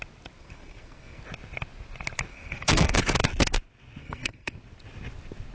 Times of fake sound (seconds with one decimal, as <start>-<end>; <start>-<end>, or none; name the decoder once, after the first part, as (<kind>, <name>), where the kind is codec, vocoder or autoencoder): 0.4-1.2 (codec, SNAC); 2.3-3.0; 4.0-4.6